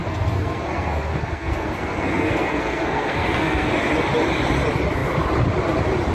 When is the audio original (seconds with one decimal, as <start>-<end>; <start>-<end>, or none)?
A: 3.7-6.1